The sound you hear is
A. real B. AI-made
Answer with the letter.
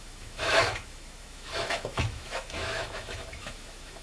B